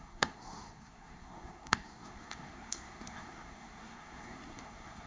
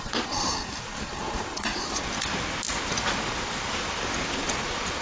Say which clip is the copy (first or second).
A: first